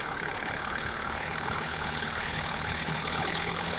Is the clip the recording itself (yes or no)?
no